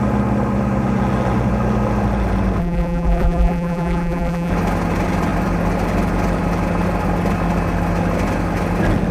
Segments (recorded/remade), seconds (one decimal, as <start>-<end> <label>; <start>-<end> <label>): 0.0-2.6 recorded; 2.6-4.5 remade; 4.5-9.1 recorded